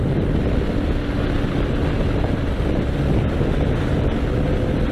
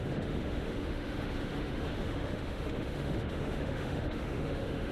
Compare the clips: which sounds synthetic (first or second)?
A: second